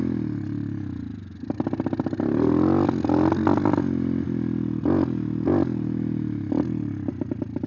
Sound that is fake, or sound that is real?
real